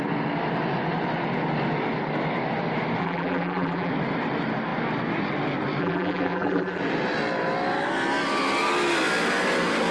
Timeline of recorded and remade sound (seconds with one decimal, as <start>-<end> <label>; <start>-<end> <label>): 0.0-3.0 recorded; 3.0-3.9 remade; 3.9-5.8 recorded; 5.8-6.8 remade; 6.8-9.9 recorded